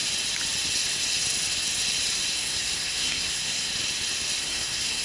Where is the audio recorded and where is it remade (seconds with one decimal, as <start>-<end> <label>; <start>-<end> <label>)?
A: 0.0-2.3 recorded; 2.3-3.7 remade; 3.7-4.4 recorded; 4.4-5.0 remade